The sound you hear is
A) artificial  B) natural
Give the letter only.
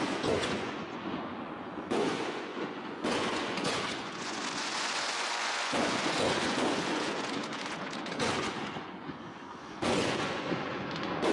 A